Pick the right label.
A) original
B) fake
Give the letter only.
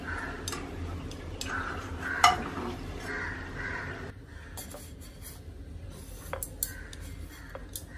A